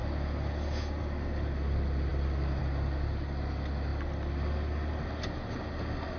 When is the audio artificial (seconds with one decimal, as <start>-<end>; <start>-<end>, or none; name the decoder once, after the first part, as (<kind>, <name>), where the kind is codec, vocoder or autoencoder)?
none